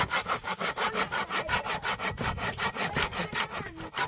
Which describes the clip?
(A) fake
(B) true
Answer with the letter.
B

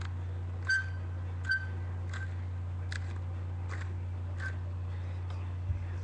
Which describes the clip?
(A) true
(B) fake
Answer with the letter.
A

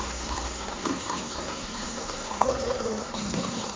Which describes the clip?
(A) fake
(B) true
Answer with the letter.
A